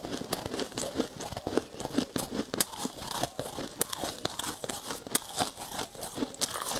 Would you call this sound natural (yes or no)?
yes